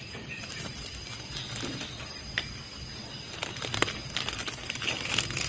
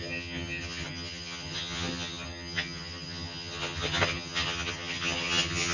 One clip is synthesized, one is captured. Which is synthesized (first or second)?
second